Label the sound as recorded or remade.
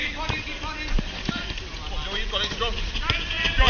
recorded